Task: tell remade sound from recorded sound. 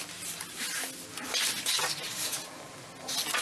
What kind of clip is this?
recorded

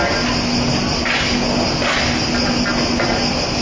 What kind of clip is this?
recorded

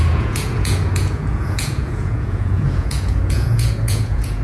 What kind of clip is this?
remade